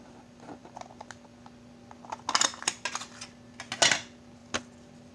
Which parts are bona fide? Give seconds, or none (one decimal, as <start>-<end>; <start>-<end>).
0.0-5.1